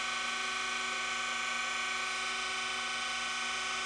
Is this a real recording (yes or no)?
yes